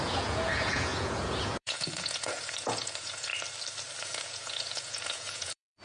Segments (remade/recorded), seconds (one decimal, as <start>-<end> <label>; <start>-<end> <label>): 0.0-3.3 remade; 3.3-4.0 recorded; 4.0-5.8 remade